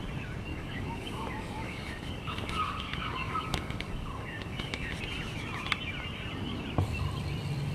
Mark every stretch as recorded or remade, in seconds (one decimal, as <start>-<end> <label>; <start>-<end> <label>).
0.0-0.5 recorded; 0.5-5.0 remade; 5.0-7.7 recorded